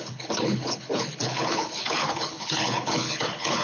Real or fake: fake